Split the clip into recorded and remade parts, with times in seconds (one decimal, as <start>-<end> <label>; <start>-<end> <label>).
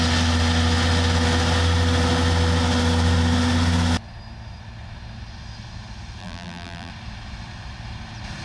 0.0-6.2 recorded; 6.2-6.9 remade; 6.9-8.4 recorded